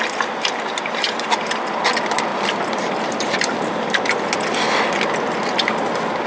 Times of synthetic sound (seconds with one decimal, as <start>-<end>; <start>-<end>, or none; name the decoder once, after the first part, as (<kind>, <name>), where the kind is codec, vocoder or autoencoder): 2.3-4.0 (vocoder, BigVGAN v2)